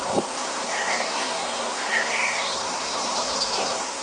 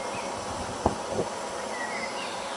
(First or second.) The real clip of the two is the second